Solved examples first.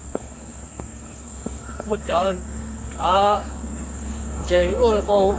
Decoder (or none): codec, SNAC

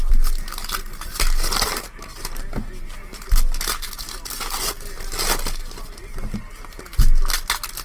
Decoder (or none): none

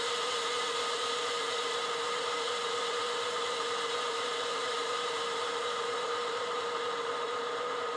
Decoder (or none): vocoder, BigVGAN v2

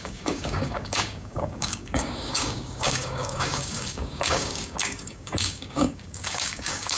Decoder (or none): codec, DAC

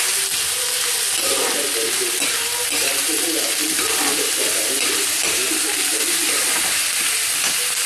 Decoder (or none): none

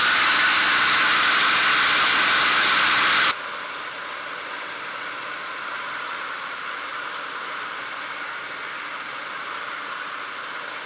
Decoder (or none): vocoder, BigVGAN v2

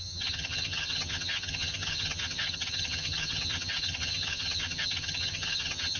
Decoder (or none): vocoder, HiFi-GAN